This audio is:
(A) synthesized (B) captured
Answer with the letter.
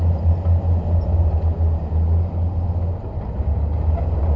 B